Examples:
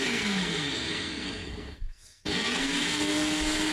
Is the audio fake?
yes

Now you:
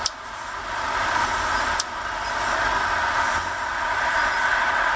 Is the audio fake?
no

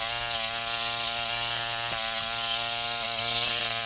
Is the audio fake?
no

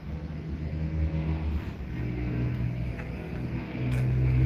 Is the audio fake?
yes